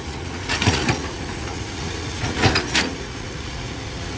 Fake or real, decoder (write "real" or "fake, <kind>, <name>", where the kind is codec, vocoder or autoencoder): fake, vocoder, Vocos